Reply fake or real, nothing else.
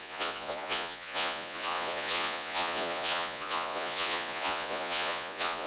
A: fake